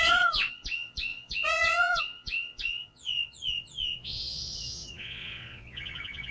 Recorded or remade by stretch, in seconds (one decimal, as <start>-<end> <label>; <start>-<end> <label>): 0.0-6.3 remade